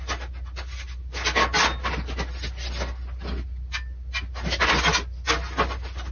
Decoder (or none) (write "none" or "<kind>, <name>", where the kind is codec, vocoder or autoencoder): none